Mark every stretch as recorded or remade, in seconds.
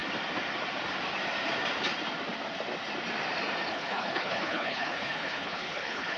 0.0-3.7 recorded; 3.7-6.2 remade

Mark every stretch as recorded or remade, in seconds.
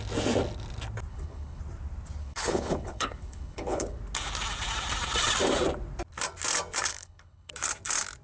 0.0-1.1 recorded; 1.1-1.6 remade; 1.6-2.2 recorded; 2.2-4.0 remade; 4.0-6.9 recorded; 6.9-7.5 remade; 7.5-8.2 recorded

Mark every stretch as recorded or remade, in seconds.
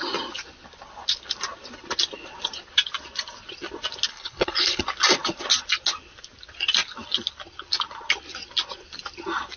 0.0-4.1 recorded; 4.1-4.8 remade; 4.8-9.6 recorded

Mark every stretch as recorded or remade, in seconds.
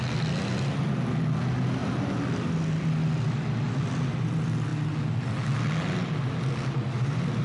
0.0-7.4 recorded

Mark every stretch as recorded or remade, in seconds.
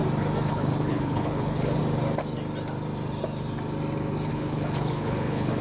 0.0-0.5 recorded; 0.5-1.8 remade; 1.8-4.3 recorded; 4.3-5.6 remade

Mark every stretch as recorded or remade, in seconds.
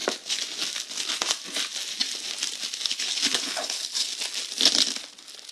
0.0-2.9 recorded; 2.9-4.1 remade; 4.1-5.5 recorded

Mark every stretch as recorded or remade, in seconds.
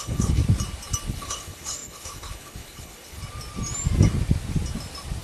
0.0-0.4 remade; 0.4-1.1 recorded; 1.1-3.2 remade; 3.2-5.2 recorded